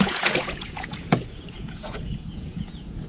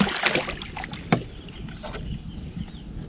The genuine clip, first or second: second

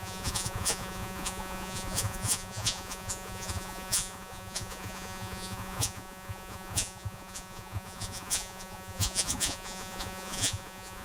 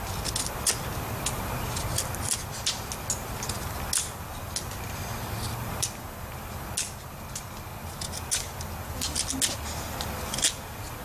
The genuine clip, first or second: second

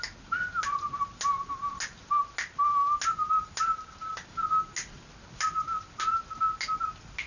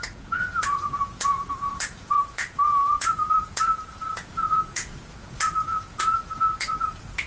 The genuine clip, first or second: first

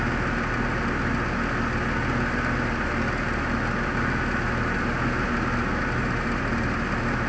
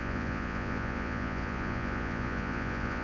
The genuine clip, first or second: first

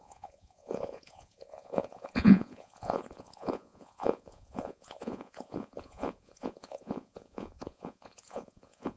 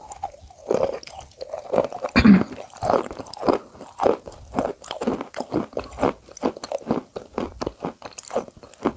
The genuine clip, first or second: second